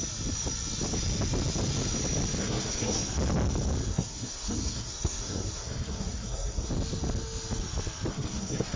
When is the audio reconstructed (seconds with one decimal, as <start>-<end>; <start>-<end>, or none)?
2.4-3.0; 3.9-6.7; 8.1-8.8